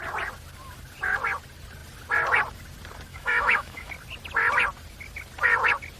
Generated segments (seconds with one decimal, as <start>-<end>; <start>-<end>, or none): 3.1-3.9